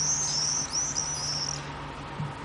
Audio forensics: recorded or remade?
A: recorded